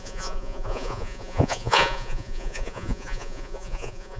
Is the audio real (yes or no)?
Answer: no